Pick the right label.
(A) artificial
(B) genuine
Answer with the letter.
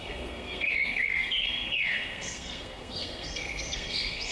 A